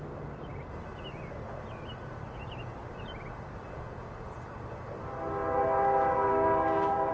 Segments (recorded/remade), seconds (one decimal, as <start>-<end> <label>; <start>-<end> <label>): 0.0-6.3 recorded; 6.3-7.1 remade